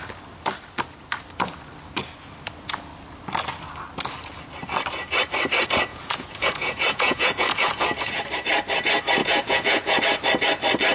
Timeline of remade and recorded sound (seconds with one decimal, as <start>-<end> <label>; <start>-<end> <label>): 0.0-5.9 recorded; 5.9-8.2 remade; 8.2-9.2 recorded; 9.2-10.0 remade; 10.0-10.9 recorded